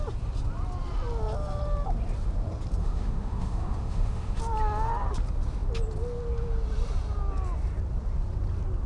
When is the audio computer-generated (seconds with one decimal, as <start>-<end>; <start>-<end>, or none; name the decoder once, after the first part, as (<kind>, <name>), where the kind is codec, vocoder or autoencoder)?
2.8-4.4 (autoencoder, DAC-VAE)